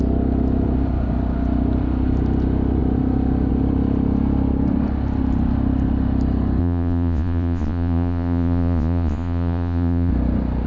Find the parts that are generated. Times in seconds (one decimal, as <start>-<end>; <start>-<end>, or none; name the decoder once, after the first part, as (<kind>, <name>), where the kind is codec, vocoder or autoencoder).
6.6-10.1 (vocoder, Vocos)